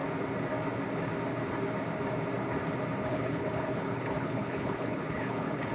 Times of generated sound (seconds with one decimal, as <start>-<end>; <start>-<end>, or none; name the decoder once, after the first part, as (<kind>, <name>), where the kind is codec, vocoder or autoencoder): 3.1-5.7 (codec, HILCodec)